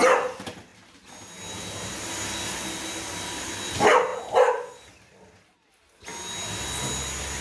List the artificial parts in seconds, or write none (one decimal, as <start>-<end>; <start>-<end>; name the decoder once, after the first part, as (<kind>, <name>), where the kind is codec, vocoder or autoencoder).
none